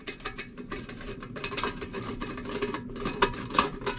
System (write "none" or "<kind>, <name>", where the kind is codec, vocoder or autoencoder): vocoder, BigVGAN v2